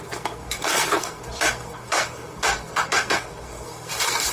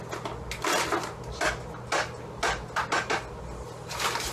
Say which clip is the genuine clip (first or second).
second